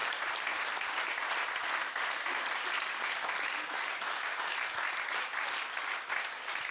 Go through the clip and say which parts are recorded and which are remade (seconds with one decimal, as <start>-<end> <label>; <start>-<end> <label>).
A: 0.0-6.7 recorded